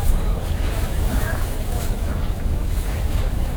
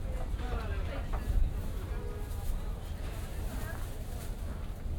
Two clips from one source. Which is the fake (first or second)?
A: first